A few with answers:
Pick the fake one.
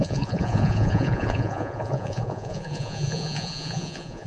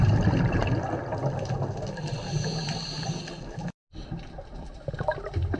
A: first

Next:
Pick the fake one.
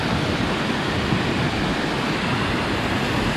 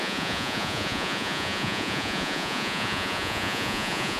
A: second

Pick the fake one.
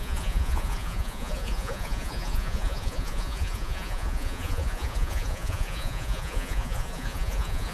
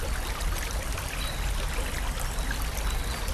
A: first